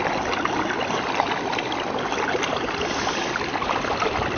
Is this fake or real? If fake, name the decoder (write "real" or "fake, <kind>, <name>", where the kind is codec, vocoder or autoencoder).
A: real